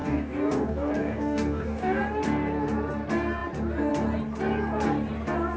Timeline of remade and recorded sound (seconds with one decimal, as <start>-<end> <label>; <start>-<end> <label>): 0.0-2.0 remade; 2.0-5.6 recorded

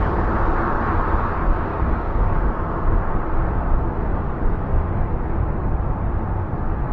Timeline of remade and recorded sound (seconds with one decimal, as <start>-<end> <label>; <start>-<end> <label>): 0.0-1.7 recorded; 1.7-2.6 remade; 2.6-4.1 recorded; 4.1-4.9 remade; 4.9-6.9 recorded

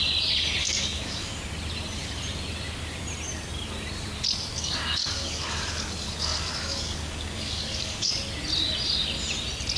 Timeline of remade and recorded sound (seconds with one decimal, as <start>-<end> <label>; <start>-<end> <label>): 0.0-0.6 recorded; 0.6-1.4 remade; 1.4-4.5 recorded; 4.5-8.1 remade; 8.1-9.8 recorded